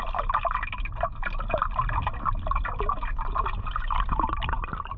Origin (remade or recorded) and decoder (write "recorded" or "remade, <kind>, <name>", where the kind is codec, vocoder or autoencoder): recorded